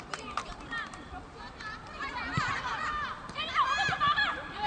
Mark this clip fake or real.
fake